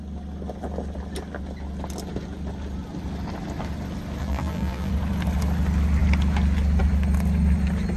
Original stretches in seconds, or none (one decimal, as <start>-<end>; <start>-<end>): 0.0-4.2; 4.9-8.0